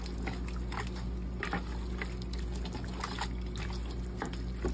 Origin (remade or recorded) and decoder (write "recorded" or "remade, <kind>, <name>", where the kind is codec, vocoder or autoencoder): recorded